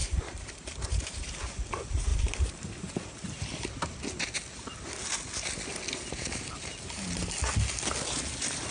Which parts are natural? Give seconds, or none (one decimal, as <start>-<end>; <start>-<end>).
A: 1.0-2.1; 2.9-8.7